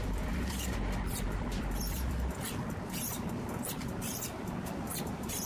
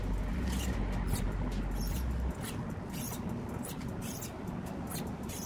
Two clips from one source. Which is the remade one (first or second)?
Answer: first